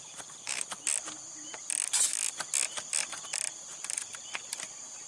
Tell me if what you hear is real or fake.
real